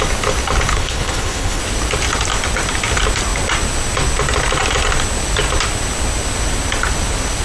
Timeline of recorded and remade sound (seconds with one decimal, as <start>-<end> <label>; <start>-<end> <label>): 0.0-0.7 recorded; 0.7-1.6 remade; 1.6-7.4 recorded